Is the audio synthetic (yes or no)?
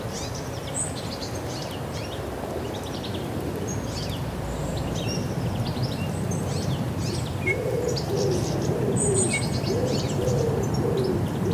yes